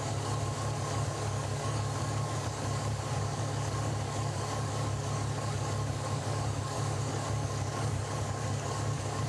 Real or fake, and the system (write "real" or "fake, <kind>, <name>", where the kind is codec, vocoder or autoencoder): fake, codec, DAC